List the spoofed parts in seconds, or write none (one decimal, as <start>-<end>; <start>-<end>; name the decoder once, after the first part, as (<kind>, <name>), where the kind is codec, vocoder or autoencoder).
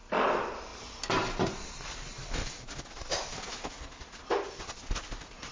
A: none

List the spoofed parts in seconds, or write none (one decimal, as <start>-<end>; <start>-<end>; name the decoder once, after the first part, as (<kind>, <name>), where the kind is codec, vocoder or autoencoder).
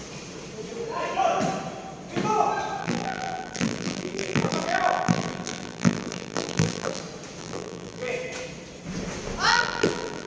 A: 2.8-7.0 (vocoder, BigVGAN v2); 7.4-8.1; 9.5-10.3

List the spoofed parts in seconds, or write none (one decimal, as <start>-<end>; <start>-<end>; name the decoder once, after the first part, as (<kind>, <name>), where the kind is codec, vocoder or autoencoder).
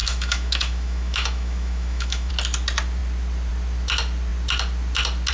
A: 0.0-2.3 (autoencoder, DAC-VAE)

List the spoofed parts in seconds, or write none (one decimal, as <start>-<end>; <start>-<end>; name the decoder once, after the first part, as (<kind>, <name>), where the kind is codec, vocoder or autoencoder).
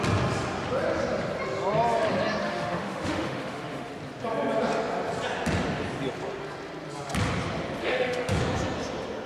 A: 2.4-3.9 (autoencoder, DAC-VAE); 7.8-8.4